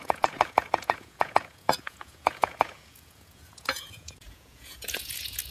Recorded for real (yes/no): no